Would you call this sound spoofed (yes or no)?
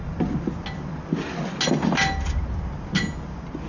no